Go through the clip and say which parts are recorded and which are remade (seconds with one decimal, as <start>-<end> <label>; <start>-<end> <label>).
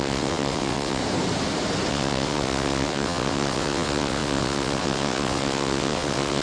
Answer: 0.0-1.0 remade; 1.0-1.9 recorded; 1.9-6.4 remade